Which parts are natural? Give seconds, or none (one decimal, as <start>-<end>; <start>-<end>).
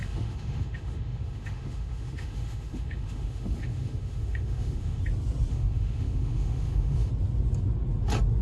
5.0-5.5; 7.1-8.4